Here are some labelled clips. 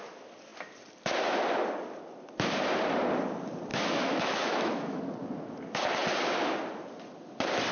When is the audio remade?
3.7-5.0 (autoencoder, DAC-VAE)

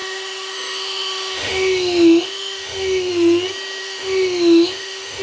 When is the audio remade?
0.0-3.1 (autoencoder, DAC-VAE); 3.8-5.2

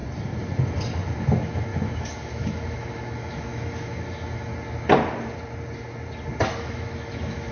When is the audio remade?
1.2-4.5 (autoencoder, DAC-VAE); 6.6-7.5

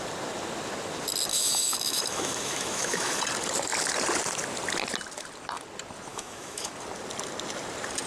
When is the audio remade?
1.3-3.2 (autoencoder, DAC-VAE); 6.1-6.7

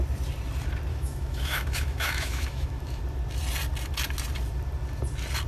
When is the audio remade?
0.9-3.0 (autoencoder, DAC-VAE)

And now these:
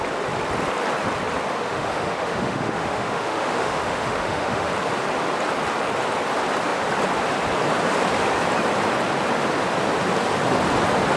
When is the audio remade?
1.5-4.7 (autoencoder, DAC-VAE)

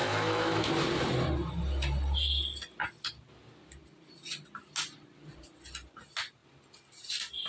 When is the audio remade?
0.0-0.7 (autoencoder, DAC-VAE)

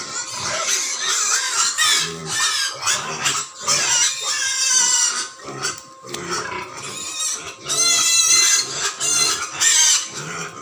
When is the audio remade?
none